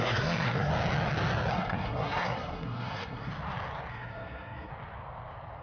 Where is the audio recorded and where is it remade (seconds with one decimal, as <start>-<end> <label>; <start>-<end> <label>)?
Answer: 0.0-0.7 remade; 0.7-1.5 recorded; 1.5-3.3 remade; 3.3-3.9 recorded; 3.9-4.7 remade; 4.7-5.6 recorded